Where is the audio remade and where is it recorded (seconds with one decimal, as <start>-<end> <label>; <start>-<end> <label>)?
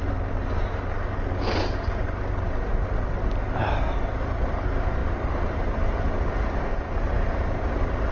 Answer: 0.0-8.1 recorded